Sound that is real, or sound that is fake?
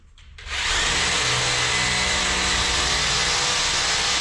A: real